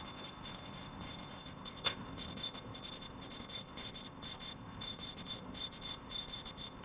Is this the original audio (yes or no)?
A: no